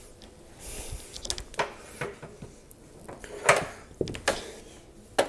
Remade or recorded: recorded